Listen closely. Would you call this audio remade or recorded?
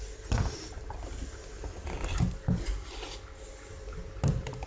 recorded